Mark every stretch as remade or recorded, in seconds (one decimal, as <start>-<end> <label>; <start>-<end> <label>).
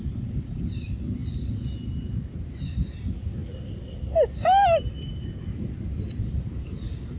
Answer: 0.0-7.2 recorded